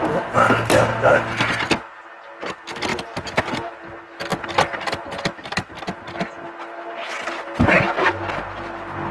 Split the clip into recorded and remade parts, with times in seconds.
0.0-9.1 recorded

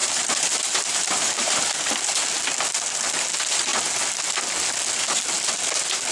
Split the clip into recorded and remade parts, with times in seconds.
0.0-1.8 remade; 1.8-6.1 recorded

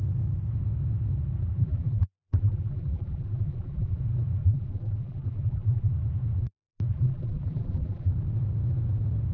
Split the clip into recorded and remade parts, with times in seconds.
0.0-1.6 recorded; 1.6-4.0 remade; 4.0-4.4 recorded; 4.4-5.9 remade; 5.9-6.9 recorded; 6.9-8.1 remade; 8.1-9.3 recorded

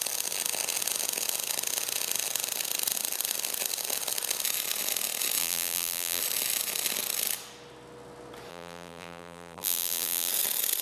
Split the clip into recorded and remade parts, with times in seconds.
0.0-5.4 recorded; 5.4-6.2 remade; 6.2-8.5 recorded; 8.5-10.3 remade; 10.3-10.8 recorded

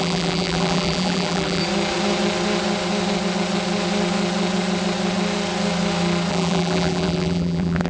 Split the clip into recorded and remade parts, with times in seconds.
0.0-1.6 remade; 1.6-6.3 recorded; 6.3-7.9 remade

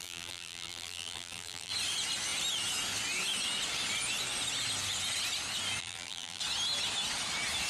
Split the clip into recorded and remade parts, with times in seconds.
0.0-1.7 remade; 1.7-5.8 recorded; 5.8-6.4 remade; 6.4-7.7 recorded

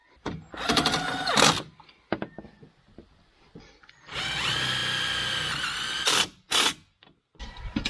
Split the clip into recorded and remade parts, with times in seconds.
0.0-4.2 remade; 4.2-7.9 recorded

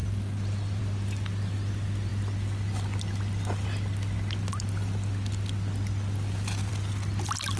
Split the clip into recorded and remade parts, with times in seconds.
0.0-7.6 recorded